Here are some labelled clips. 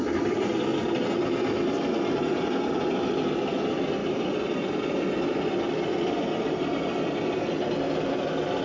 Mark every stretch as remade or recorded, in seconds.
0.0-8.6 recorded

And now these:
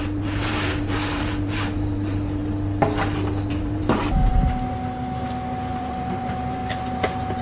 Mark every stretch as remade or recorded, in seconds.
0.0-2.4 remade; 2.4-3.5 recorded; 3.5-4.3 remade; 4.3-5.7 recorded; 5.7-6.6 remade; 6.6-7.4 recorded

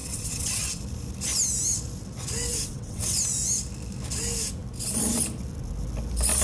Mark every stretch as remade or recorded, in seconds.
0.0-0.8 remade; 0.8-2.5 recorded; 2.5-3.2 remade; 3.2-6.4 recorded

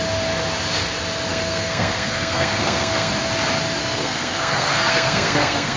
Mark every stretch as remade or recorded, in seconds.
0.0-1.3 recorded; 1.3-3.1 remade; 3.1-3.8 recorded; 3.8-5.8 remade

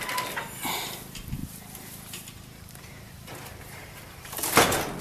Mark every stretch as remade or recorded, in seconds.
0.0-1.4 recorded; 1.4-4.4 remade; 4.4-5.0 recorded

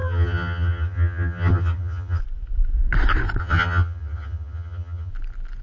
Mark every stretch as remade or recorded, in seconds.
0.0-2.2 remade; 2.2-3.4 recorded; 3.4-5.1 remade; 5.1-5.6 recorded